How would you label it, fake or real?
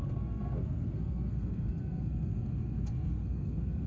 fake